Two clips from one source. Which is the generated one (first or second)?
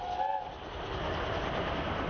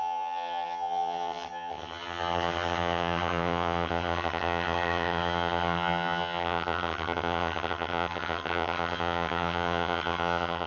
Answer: second